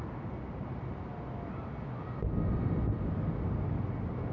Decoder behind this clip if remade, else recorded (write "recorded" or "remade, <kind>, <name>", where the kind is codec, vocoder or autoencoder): recorded